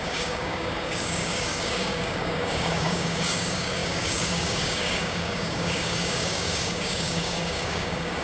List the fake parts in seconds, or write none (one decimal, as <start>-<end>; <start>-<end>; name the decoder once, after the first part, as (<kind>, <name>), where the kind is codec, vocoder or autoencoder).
0.0-8.2 (codec, DAC)